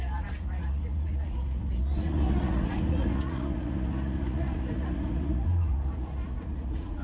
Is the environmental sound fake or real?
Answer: fake